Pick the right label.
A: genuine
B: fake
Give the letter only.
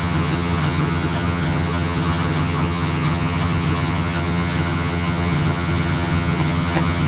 B